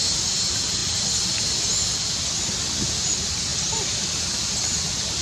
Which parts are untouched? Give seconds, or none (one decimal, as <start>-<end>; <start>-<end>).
0.0-5.2